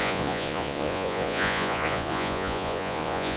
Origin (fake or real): fake